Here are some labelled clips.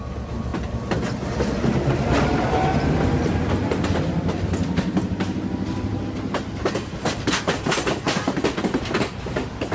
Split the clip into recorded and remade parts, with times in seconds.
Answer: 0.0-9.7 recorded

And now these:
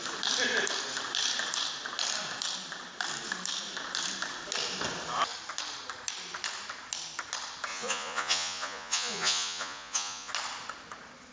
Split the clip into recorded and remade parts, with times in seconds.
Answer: 0.0-7.7 recorded; 7.7-10.3 remade; 10.3-11.3 recorded

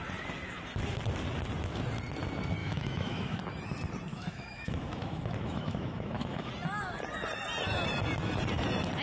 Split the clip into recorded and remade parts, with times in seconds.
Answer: 0.0-2.6 recorded; 2.6-3.4 remade; 3.4-4.1 recorded; 4.1-6.5 remade; 6.5-9.0 recorded